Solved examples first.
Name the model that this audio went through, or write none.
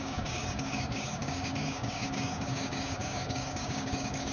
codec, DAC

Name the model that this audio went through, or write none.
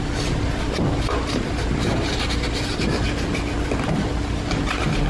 none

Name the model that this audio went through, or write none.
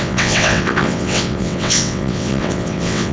vocoder, WaveNeXt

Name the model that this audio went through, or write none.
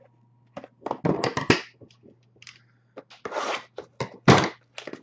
none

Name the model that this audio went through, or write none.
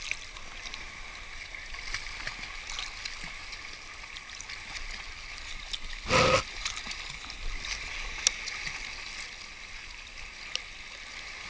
none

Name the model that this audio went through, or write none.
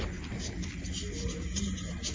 none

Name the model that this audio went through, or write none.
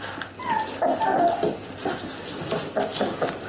none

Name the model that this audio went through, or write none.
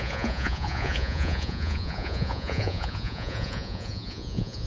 vocoder, Vocos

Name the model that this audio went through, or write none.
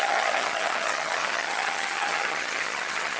vocoder, HiFi-GAN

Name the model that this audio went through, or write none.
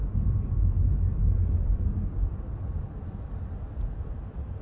none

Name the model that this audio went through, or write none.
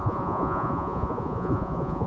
vocoder, Vocos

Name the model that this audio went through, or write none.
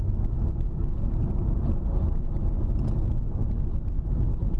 none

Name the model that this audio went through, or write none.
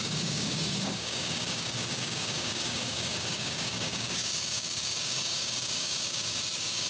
codec, DAC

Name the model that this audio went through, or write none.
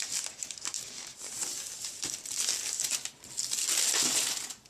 none